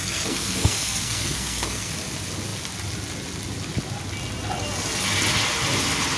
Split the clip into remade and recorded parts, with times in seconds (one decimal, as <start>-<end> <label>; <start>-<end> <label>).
0.0-1.9 remade; 1.9-6.2 recorded